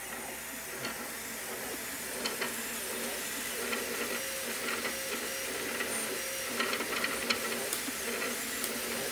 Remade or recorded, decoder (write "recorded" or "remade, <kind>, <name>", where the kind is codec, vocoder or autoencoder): recorded